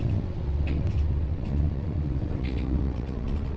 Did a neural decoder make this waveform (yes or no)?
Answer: yes